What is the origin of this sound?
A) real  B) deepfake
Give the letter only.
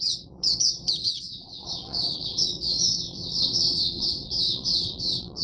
B